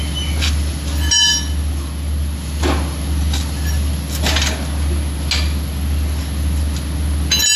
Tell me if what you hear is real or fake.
real